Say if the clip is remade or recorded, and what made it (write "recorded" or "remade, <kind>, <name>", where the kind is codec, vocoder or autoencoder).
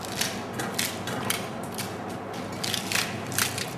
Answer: recorded